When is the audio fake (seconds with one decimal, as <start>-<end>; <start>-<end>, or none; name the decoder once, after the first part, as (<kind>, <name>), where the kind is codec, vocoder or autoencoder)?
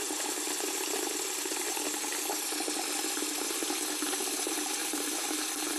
4.8-5.8 (vocoder, BigVGAN v2)